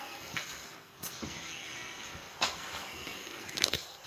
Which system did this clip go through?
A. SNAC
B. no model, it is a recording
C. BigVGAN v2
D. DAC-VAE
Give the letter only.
A